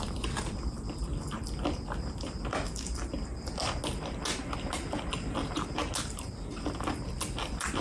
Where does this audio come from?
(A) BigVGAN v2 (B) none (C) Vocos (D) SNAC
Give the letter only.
B